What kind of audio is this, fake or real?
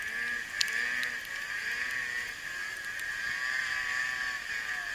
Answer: real